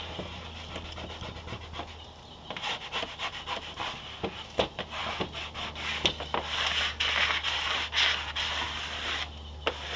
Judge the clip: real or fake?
real